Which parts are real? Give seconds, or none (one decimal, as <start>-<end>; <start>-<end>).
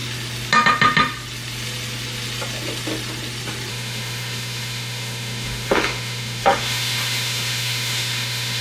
0.0-3.7